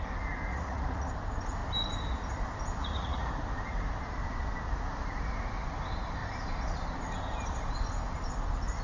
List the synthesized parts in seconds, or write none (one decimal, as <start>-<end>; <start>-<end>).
0.5-1.1; 2.8-3.3